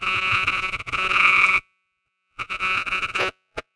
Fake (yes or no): yes